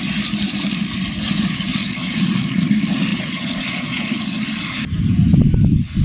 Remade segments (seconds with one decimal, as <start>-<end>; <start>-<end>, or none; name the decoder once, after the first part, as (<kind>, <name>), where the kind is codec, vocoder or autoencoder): 1.7-2.7 (vocoder, Vocos); 3.1-4.2